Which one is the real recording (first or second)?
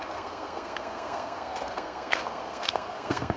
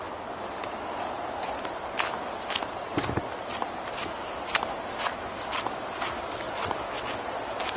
second